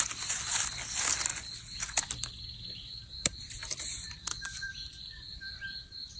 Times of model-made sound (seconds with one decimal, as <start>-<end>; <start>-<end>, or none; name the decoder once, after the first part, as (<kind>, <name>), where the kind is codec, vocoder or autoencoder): 4.3-5.4 (vocoder, Vocos)